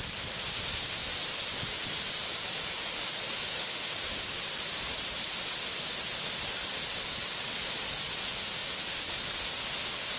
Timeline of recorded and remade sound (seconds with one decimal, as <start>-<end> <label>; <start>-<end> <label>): 0.0-1.0 recorded; 1.0-2.7 remade; 2.7-8.6 recorded; 8.6-9.4 remade; 9.4-10.2 recorded